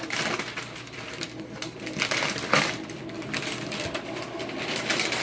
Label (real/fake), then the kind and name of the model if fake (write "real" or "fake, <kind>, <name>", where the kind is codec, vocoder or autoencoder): real